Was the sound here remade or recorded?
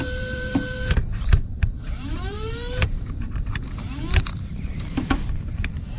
remade